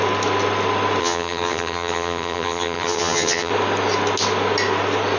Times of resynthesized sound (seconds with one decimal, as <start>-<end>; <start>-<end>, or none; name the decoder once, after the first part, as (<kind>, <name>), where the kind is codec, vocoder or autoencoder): 1.0-3.5 (vocoder, HiFi-GAN)